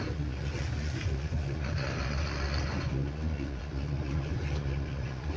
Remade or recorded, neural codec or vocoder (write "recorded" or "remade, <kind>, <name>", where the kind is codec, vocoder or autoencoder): remade, vocoder, Vocos